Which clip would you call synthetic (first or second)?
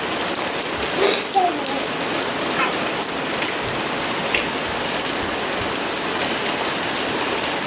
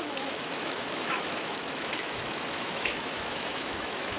second